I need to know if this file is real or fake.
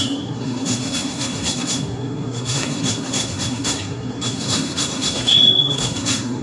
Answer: fake